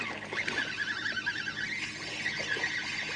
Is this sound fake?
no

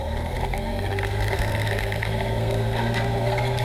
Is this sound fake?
yes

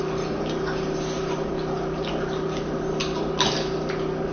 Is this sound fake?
no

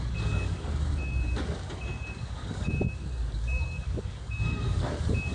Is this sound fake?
yes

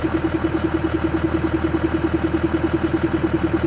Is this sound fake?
no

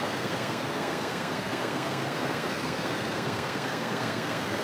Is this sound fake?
yes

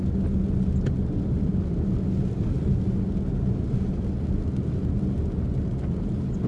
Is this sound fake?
no